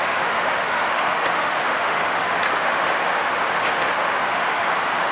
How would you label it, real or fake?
fake